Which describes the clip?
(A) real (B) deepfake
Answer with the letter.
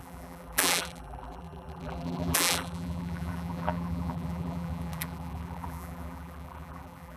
B